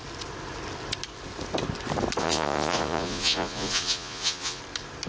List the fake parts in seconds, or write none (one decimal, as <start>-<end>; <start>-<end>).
2.2-4.6